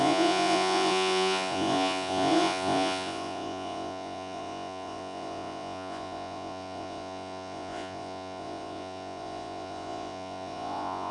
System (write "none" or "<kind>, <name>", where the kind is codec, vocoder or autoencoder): vocoder, Vocos